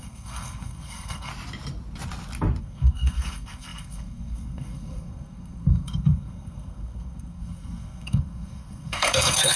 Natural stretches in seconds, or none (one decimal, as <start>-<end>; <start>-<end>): 1.3-2.6

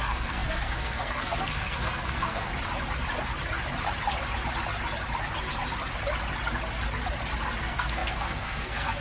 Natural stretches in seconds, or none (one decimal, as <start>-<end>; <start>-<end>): 2.5-7.6

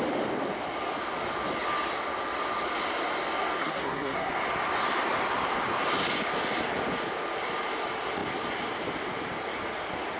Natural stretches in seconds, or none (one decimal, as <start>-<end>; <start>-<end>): 0.0-3.6; 4.3-10.2

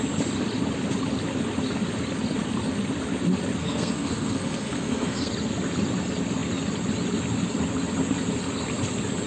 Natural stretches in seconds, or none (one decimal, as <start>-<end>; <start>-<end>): 0.0-3.6; 5.3-9.3